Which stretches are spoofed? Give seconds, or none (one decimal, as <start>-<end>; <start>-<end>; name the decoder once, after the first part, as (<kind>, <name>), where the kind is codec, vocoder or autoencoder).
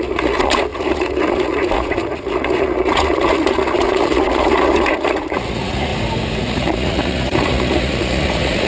0.0-5.9 (vocoder, Vocos); 6.4-8.7